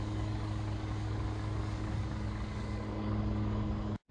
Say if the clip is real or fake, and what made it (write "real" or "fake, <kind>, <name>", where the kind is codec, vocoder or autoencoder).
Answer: fake, codec, DAC